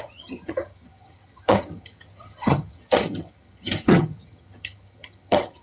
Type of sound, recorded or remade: remade